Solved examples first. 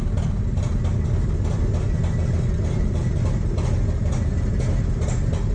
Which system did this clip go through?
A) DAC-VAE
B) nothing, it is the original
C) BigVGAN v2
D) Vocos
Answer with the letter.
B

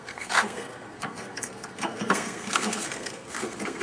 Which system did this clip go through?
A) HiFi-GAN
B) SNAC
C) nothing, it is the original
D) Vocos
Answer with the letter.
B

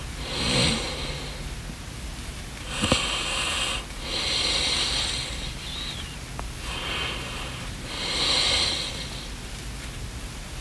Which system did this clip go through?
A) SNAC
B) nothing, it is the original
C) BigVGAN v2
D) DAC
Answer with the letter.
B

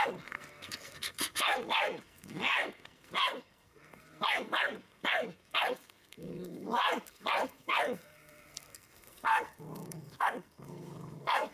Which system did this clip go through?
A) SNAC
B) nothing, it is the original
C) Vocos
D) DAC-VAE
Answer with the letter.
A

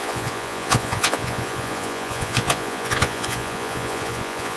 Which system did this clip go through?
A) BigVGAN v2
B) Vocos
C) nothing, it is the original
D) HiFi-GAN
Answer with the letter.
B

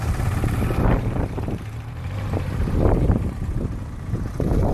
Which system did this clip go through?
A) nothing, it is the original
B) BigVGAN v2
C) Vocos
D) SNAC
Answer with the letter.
B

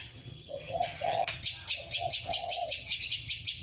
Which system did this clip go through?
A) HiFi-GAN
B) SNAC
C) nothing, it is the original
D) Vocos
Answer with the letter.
A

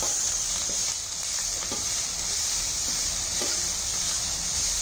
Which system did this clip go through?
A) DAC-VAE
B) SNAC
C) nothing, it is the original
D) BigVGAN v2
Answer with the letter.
C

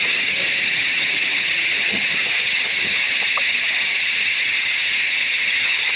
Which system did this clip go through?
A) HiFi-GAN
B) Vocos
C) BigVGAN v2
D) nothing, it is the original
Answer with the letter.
A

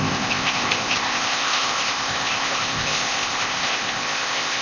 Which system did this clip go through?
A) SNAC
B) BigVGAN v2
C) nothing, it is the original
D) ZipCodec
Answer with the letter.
D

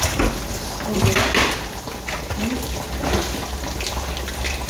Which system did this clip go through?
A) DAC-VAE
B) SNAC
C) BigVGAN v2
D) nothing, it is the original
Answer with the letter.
D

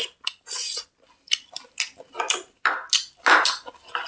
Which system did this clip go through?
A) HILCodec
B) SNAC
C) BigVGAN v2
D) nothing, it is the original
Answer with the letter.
D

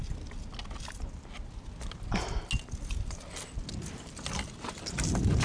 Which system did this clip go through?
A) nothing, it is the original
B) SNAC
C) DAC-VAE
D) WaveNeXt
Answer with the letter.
A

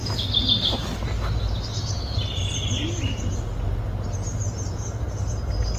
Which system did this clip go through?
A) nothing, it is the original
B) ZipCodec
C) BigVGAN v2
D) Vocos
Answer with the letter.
A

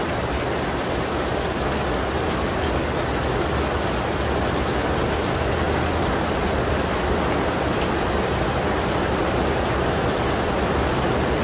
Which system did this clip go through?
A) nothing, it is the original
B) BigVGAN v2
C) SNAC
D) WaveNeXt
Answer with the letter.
A